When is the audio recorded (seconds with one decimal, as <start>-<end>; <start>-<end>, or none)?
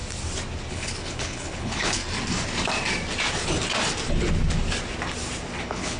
0.0-0.7; 2.0-5.6